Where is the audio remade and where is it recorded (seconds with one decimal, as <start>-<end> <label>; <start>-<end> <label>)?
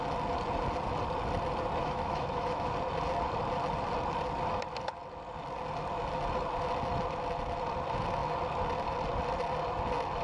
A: 0.0-1.8 recorded; 1.8-2.7 remade; 2.7-10.2 recorded